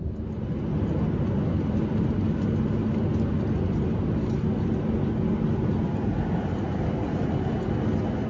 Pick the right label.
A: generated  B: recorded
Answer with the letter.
B